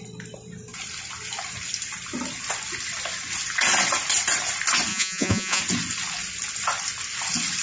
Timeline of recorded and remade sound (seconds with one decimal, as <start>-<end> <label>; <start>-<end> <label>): 0.0-4.9 recorded; 4.9-5.6 remade; 5.6-7.6 recorded

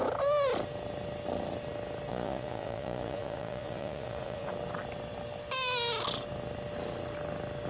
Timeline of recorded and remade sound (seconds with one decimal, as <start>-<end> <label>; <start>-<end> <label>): 0.0-2.1 recorded; 2.1-4.5 remade; 4.5-7.7 recorded